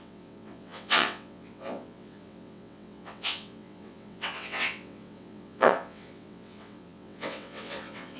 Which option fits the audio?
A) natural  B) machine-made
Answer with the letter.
B